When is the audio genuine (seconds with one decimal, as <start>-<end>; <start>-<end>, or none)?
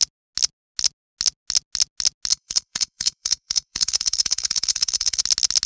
0.0-2.3; 5.2-5.7